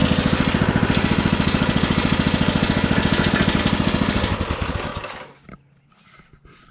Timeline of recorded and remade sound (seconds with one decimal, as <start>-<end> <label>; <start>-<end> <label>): 0.0-6.7 recorded